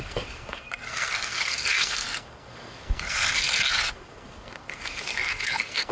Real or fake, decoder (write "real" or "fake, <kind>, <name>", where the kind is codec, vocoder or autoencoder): fake, codec, SNAC